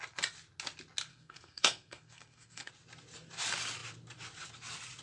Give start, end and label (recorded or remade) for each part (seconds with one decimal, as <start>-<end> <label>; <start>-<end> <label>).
0.0-1.1 recorded; 1.1-2.7 remade; 2.7-5.0 recorded